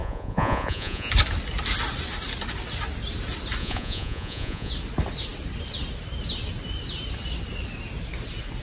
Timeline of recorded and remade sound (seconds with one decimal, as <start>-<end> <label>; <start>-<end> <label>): 0.0-1.1 remade; 1.1-3.6 recorded; 3.6-4.7 remade; 4.7-8.6 recorded